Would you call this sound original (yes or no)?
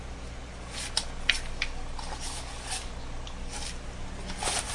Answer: yes